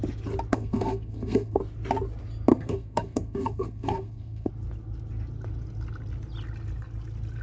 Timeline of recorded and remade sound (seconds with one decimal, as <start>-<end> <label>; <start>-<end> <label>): 0.0-0.5 recorded; 0.5-1.6 remade; 1.6-2.5 recorded; 2.5-4.5 remade; 4.5-7.4 recorded